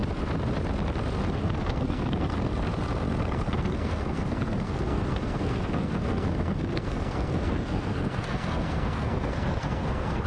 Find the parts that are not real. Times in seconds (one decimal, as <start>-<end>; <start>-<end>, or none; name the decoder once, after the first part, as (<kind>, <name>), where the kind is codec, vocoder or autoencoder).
1.3-2.5 (codec, SNAC); 3.2-10.3